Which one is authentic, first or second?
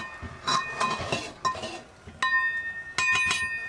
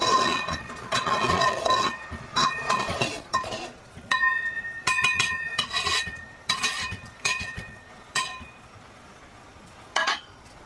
first